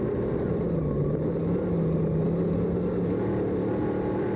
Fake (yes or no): no